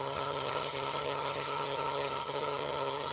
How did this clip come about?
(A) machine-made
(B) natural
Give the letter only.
A